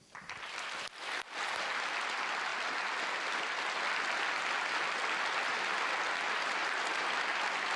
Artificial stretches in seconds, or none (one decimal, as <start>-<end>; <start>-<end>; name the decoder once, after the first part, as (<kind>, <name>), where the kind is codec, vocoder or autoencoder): 6.6-7.1 (vocoder, BigVGAN v2)